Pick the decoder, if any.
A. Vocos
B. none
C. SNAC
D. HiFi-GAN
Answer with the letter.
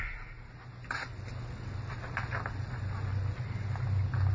B